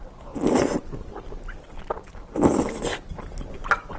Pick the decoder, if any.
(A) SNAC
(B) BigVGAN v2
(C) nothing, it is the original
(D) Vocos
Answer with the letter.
C